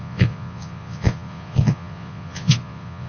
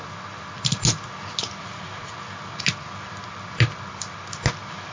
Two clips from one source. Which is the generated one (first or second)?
first